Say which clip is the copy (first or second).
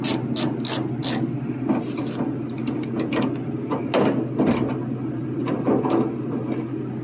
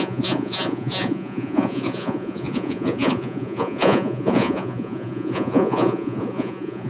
second